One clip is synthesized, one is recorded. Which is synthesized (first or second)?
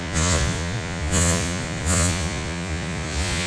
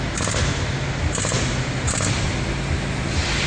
first